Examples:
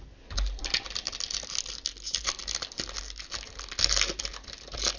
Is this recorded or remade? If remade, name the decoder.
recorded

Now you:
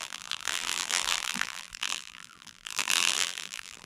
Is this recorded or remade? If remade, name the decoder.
remade, vocoder, BigVGAN v2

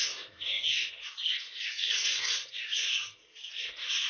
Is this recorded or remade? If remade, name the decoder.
remade, codec, SNAC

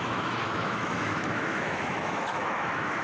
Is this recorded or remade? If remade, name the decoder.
remade, autoencoder, DAC-VAE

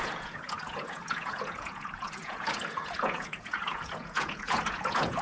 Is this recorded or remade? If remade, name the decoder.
remade, vocoder, Vocos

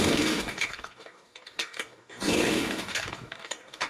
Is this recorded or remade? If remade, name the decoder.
remade, codec, DAC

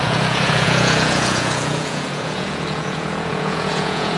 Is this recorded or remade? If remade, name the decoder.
remade, vocoder, Vocos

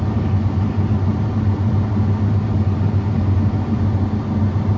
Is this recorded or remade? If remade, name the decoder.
recorded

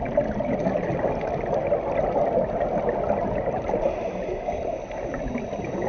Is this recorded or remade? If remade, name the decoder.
recorded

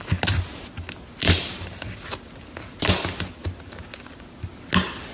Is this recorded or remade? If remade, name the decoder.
recorded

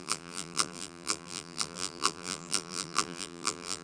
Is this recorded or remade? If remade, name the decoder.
remade, vocoder, BigVGAN v2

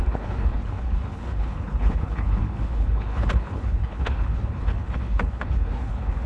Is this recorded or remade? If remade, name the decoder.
remade, codec, HILCodec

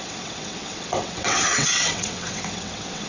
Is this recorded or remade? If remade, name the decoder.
remade, vocoder, WaveNeXt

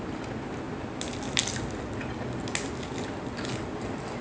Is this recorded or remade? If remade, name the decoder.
recorded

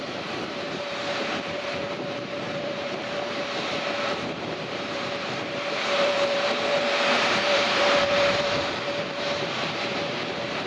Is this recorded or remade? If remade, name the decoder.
remade, vocoder, BigVGAN v2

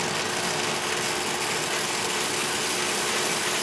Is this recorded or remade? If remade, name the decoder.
recorded